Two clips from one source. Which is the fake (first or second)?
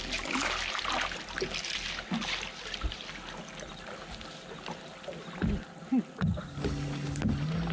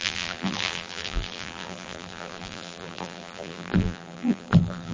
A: second